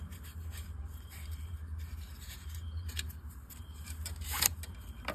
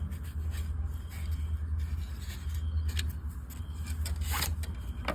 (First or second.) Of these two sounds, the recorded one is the second